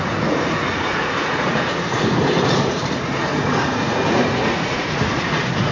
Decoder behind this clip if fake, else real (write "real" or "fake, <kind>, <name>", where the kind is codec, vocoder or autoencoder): fake, vocoder, Vocos